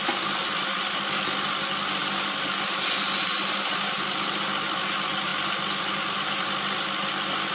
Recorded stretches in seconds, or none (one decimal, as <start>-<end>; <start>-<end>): 0.0-7.5